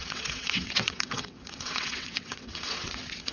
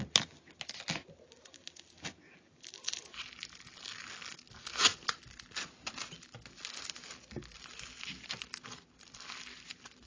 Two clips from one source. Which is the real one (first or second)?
second